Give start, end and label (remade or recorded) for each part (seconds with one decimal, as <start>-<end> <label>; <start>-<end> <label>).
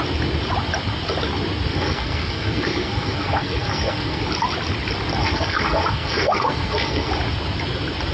0.0-1.7 recorded; 1.7-4.2 remade; 4.2-5.2 recorded; 5.2-7.1 remade; 7.1-8.1 recorded